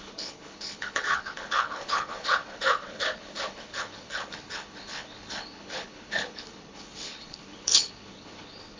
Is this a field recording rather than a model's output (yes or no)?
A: no